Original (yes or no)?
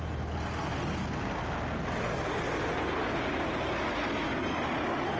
yes